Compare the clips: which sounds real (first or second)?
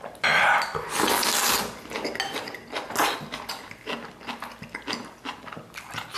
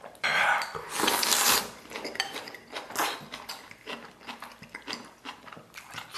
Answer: first